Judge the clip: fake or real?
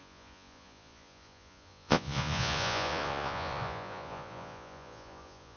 fake